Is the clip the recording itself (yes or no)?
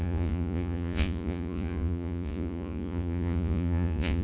no